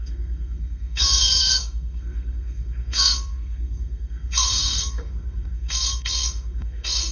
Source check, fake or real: fake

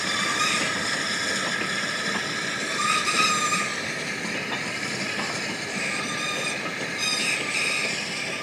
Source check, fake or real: real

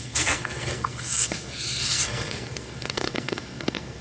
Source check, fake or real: fake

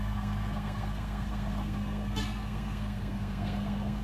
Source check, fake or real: fake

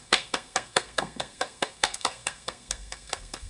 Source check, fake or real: fake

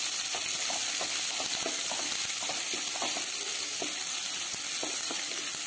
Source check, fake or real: real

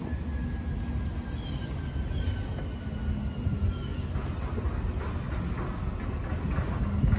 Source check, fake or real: real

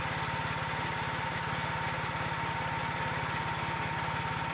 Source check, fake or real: real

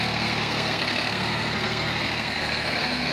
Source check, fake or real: fake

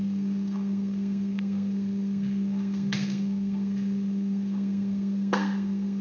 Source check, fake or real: fake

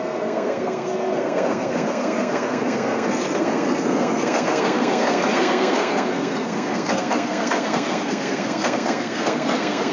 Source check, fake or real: fake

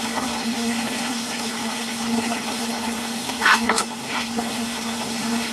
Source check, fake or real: fake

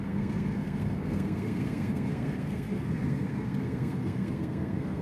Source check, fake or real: fake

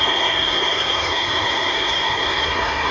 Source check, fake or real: fake